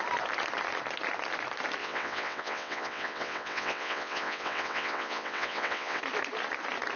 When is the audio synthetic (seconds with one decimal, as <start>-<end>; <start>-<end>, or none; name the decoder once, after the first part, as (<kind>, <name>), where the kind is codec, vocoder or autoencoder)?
1.8-6.0 (vocoder, WaveNeXt)